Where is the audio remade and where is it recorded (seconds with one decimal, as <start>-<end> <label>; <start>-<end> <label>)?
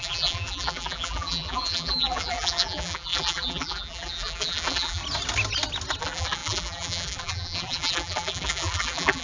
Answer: 0.0-5.0 remade; 5.0-6.0 recorded; 6.0-9.2 remade